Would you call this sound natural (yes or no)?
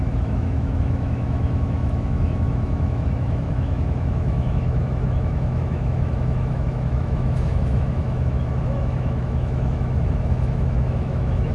no